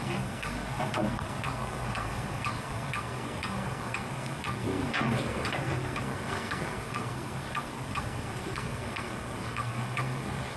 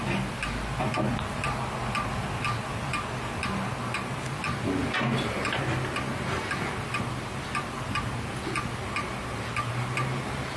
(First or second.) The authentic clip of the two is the second